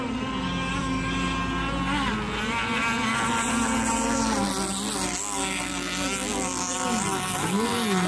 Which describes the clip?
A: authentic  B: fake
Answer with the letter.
A